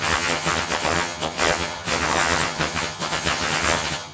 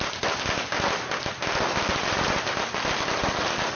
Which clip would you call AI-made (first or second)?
first